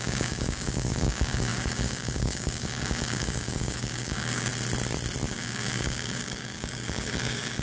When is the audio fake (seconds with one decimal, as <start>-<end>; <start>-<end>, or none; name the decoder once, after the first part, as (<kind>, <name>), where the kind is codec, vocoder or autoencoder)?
0.0-4.5 (codec, DAC); 5.3-7.6